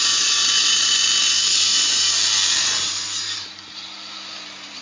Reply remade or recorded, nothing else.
remade